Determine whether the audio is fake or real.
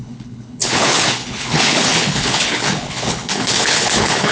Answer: fake